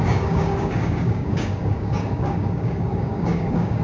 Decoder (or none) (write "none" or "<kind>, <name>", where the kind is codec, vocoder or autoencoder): codec, DAC